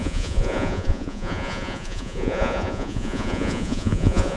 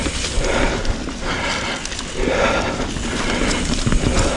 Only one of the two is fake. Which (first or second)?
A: first